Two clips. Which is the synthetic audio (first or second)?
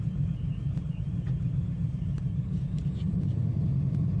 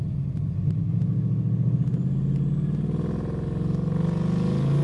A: first